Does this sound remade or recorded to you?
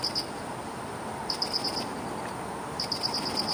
recorded